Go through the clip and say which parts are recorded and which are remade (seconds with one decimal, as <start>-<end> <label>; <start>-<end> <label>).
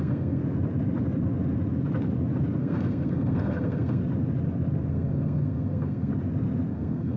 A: 0.0-0.4 remade; 0.4-2.6 recorded; 2.6-4.0 remade; 4.0-4.9 recorded; 4.9-6.1 remade; 6.1-6.7 recorded; 6.7-7.2 remade